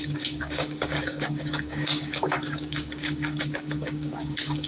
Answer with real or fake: fake